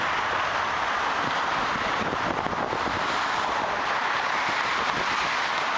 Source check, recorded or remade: recorded